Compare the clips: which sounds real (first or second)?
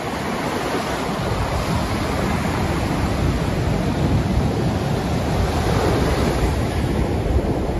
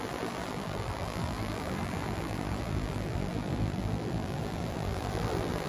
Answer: first